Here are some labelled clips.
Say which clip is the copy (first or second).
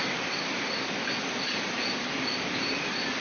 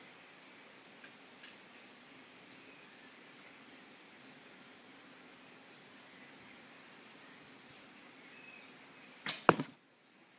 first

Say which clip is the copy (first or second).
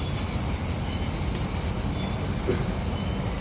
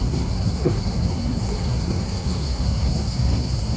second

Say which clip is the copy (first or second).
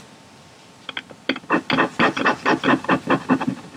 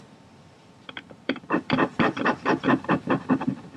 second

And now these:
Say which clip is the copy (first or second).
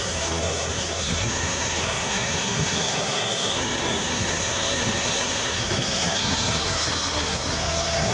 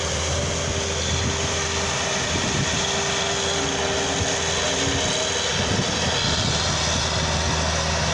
first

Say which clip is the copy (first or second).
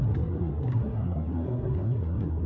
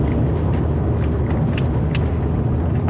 first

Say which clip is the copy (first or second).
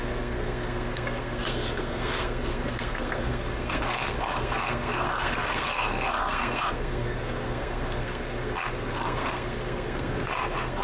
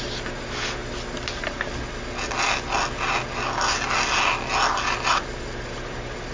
first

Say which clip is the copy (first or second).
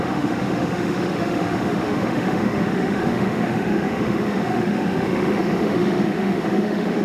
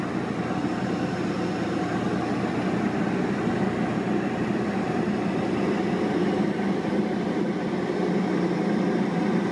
first